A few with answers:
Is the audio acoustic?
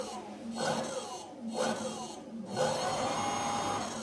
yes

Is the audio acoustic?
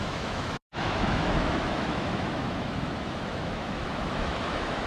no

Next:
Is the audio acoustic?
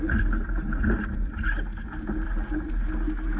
yes